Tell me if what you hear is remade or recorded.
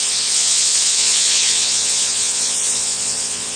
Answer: remade